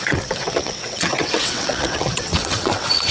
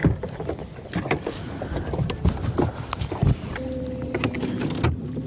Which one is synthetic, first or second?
first